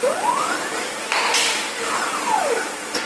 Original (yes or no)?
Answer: yes